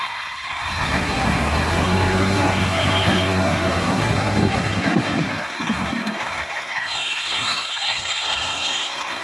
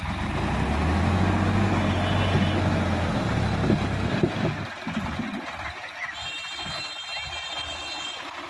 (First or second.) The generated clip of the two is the first